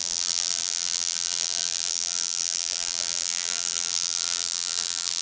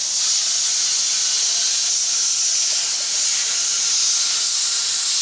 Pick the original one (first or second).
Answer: second